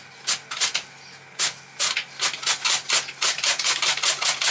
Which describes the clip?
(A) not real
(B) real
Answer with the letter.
B